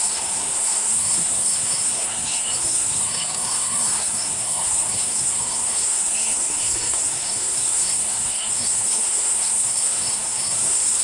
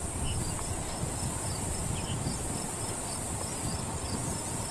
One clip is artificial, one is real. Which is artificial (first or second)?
first